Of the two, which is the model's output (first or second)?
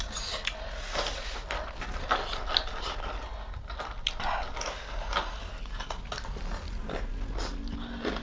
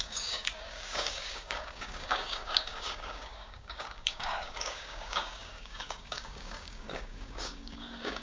second